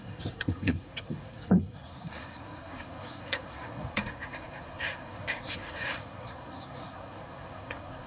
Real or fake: fake